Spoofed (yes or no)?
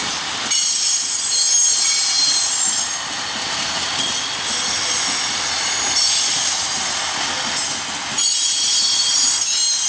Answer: no